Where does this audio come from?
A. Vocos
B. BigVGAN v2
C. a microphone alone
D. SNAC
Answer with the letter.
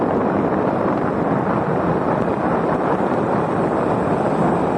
B